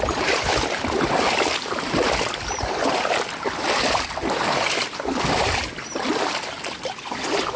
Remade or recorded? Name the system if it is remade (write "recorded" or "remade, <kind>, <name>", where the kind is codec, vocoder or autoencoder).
recorded